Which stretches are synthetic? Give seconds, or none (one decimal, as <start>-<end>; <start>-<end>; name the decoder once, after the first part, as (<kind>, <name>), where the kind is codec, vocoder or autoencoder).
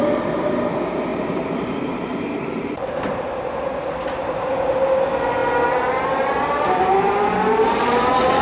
1.1-3.4 (vocoder, BigVGAN v2)